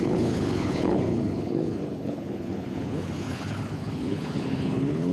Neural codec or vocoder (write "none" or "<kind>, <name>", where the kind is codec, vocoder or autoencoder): codec, HILCodec